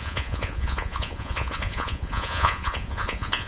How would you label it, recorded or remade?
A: remade